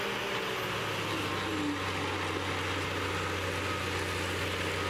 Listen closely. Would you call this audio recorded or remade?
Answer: recorded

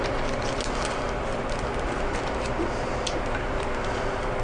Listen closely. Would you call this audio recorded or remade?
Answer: recorded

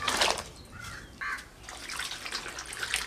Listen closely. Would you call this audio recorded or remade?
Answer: recorded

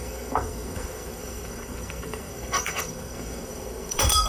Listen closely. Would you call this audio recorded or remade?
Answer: remade